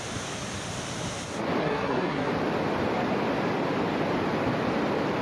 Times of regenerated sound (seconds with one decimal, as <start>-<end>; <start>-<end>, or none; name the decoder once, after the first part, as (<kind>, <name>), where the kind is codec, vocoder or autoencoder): 1.6-2.3 (codec, SNAC)